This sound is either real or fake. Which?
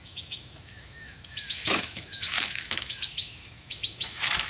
fake